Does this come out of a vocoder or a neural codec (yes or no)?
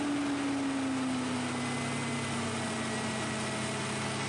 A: no